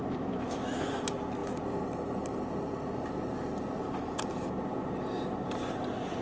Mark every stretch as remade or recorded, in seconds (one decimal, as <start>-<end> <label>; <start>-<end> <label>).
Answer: 0.0-0.9 remade; 0.9-6.2 recorded